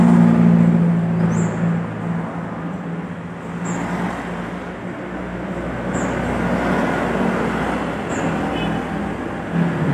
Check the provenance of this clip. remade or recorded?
recorded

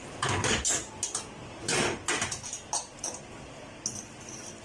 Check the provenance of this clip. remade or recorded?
recorded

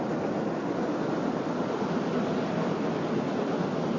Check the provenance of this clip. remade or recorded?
recorded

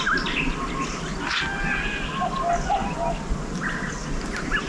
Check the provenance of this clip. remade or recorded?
recorded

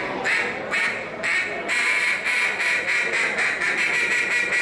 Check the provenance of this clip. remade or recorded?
recorded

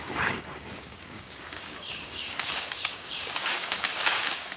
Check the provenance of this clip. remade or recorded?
remade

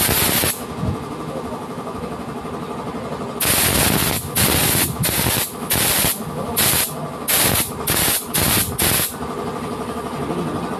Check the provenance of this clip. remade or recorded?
recorded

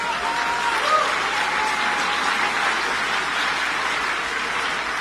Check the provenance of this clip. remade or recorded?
recorded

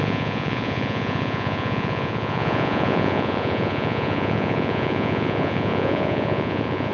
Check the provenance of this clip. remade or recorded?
remade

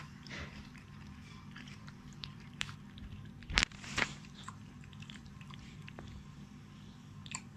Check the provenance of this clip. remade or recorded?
remade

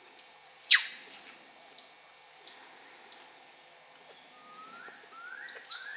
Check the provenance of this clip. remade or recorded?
recorded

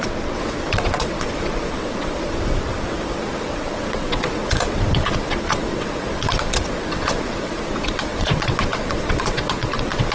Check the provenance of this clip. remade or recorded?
remade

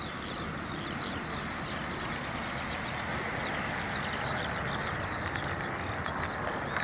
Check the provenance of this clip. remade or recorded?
recorded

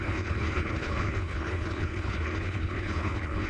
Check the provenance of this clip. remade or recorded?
remade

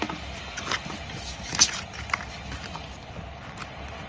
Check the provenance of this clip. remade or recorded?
recorded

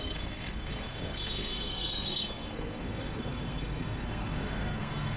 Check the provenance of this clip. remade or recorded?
remade